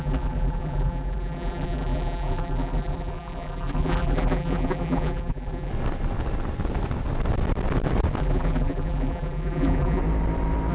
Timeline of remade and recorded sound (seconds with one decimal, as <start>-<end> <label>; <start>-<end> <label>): 0.0-5.7 remade; 5.7-8.2 recorded; 8.2-10.0 remade; 10.0-10.7 recorded